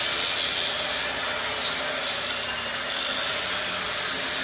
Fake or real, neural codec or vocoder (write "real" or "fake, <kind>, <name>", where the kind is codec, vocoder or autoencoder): real